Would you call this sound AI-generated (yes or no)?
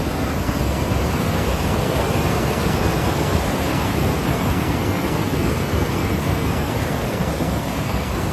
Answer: yes